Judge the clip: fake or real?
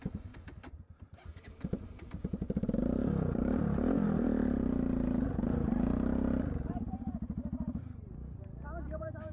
fake